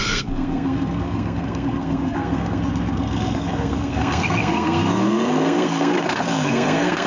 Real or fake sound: fake